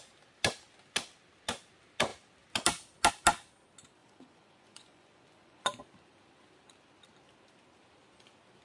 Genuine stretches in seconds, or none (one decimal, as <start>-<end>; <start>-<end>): 0.0-4.0; 5.8-8.6